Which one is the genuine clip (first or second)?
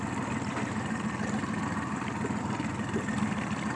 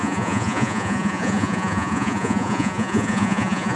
first